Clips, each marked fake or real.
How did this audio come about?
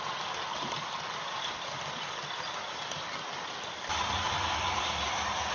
real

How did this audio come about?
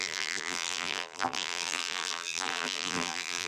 fake